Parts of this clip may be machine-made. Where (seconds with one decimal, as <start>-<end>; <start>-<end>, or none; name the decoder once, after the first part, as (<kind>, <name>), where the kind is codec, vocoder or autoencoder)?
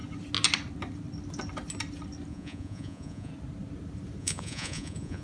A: 2.3-3.3 (vocoder, Vocos); 4.2-5.2